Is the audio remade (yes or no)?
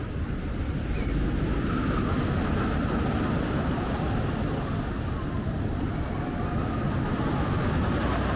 no